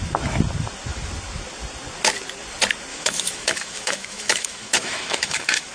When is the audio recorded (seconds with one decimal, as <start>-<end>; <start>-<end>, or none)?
0.0-2.9